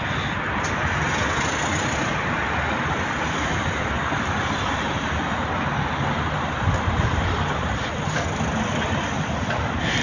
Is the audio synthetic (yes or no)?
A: no